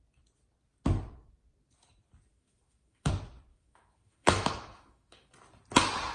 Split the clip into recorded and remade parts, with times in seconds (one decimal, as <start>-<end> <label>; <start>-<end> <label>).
0.0-2.3 recorded; 2.3-3.1 remade; 3.1-3.5 recorded; 3.5-5.3 remade; 5.3-6.1 recorded